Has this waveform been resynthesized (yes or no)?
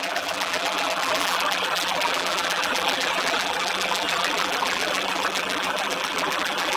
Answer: yes